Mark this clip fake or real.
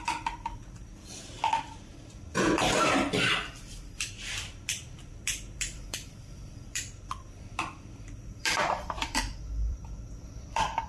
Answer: fake